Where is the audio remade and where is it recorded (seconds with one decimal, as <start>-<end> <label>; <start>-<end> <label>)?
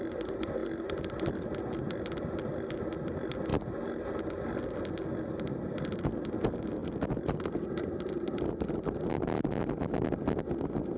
0.0-6.8 recorded; 6.8-7.6 remade; 7.6-11.0 recorded